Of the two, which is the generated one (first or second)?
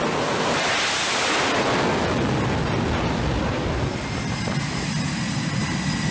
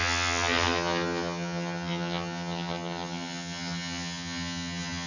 second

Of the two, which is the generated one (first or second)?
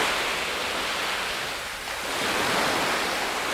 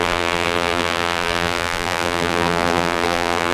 second